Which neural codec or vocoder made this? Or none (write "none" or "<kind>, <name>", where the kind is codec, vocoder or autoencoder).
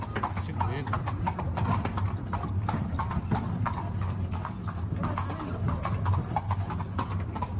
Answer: none